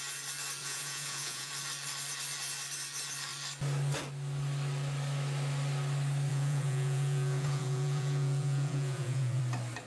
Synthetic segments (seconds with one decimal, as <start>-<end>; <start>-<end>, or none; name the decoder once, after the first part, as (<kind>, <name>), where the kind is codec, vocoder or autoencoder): 0.6-1.5 (vocoder, Vocos); 6.3-9.4